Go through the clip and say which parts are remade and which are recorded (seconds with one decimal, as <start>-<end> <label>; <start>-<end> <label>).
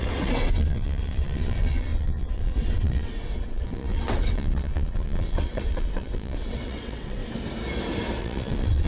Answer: 0.0-7.2 remade; 7.2-8.2 recorded; 8.2-8.9 remade